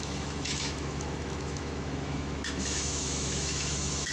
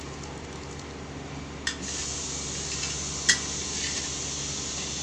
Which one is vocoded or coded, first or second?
first